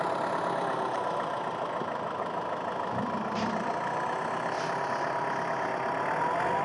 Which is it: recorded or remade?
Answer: recorded